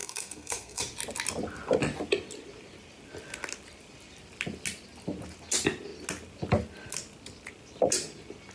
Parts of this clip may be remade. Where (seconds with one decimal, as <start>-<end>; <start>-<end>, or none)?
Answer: 0.0-0.8